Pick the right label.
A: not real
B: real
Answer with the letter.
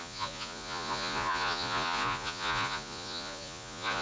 A